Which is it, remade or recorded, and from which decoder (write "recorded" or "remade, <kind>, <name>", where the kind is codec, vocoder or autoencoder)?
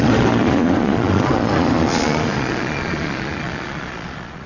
remade, vocoder, Vocos